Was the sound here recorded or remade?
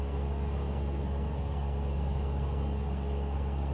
remade